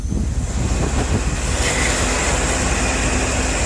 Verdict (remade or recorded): recorded